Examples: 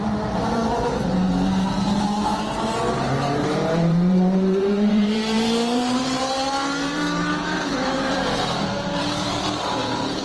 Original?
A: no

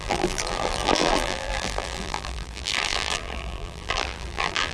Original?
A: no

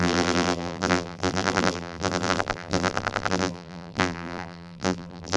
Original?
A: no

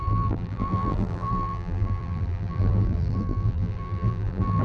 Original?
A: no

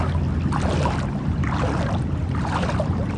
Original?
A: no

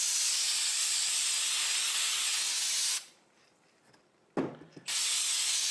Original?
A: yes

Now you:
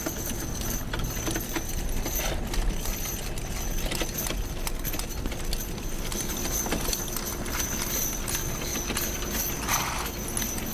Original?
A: yes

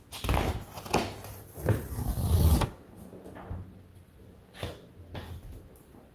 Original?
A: yes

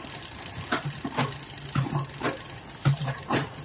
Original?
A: yes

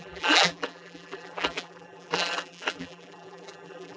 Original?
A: no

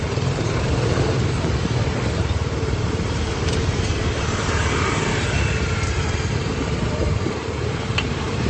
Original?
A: no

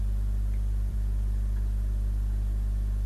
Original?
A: no